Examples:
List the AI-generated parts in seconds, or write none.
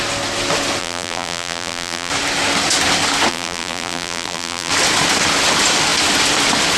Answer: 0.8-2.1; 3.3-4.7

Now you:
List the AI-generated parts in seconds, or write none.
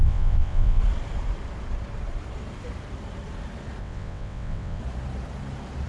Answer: 0.0-0.8; 3.8-4.8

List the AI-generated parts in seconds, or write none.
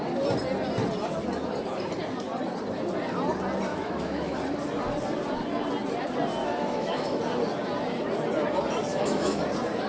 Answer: 3.7-4.4; 6.4-7.2; 8.9-9.4